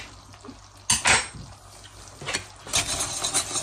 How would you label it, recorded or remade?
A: recorded